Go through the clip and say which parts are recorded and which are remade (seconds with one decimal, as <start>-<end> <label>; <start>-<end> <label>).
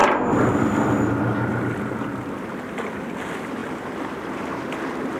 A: 0.0-5.2 recorded